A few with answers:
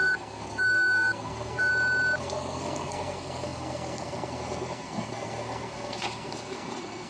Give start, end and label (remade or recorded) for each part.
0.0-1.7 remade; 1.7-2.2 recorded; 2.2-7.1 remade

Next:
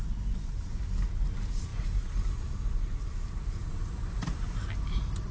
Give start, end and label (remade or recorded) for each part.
0.0-1.7 recorded; 1.7-4.7 remade; 4.7-5.3 recorded

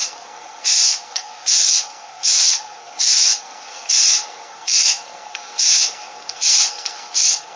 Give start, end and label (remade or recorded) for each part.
0.0-7.6 remade

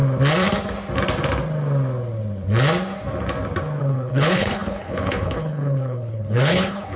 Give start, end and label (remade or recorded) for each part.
0.0-3.8 recorded; 3.8-7.0 remade

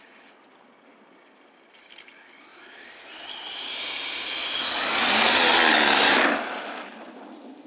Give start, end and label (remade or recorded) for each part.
0.0-2.5 recorded; 2.5-4.6 remade; 4.6-7.7 recorded

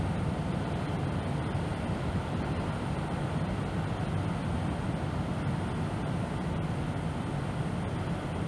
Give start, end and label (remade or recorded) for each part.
0.0-8.5 recorded